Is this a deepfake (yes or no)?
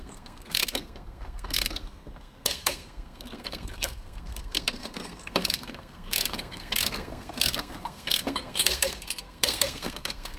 yes